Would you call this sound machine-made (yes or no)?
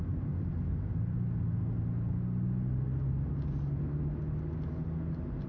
no